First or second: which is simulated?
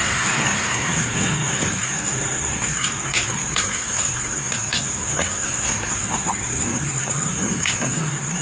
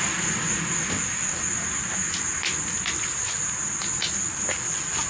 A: first